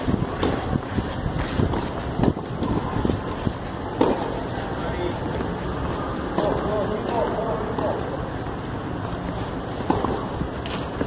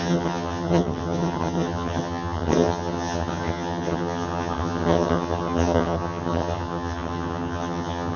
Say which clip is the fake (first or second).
second